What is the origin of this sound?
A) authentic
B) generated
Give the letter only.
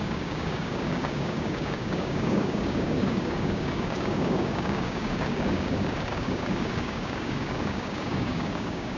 B